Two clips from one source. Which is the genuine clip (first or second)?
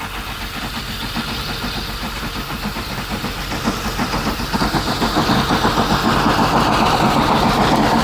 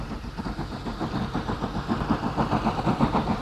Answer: first